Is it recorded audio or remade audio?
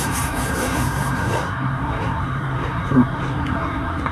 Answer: remade